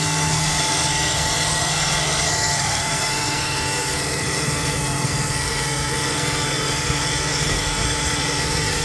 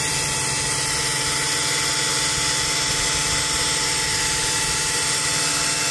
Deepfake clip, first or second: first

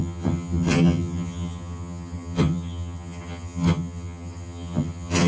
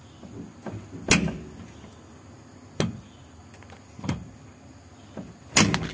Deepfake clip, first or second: first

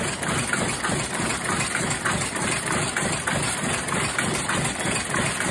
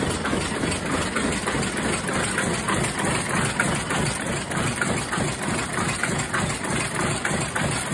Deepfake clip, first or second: first